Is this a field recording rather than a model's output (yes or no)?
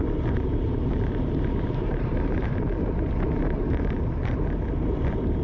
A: no